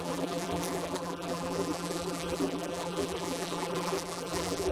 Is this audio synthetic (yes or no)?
yes